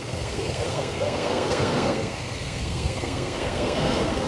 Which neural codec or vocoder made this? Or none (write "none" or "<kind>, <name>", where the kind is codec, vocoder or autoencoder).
codec, SNAC